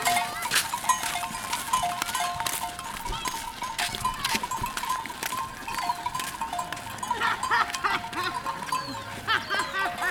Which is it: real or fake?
real